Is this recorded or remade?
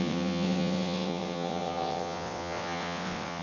remade